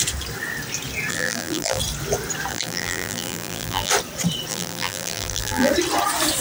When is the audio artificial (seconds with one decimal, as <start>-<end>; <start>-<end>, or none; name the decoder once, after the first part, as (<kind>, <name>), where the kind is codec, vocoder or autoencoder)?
1.1-1.8 (vocoder, BigVGAN v2); 2.5-3.9; 4.5-5.7